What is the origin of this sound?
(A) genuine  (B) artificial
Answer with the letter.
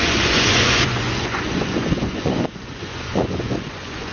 B